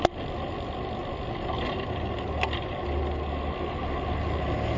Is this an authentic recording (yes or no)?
yes